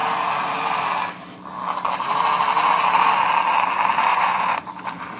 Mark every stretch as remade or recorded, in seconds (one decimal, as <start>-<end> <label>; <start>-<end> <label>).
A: 0.0-4.1 recorded; 4.1-4.6 remade; 4.6-5.2 recorded